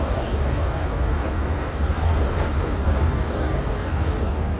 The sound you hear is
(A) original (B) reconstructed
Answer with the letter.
B